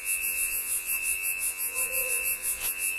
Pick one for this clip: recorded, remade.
remade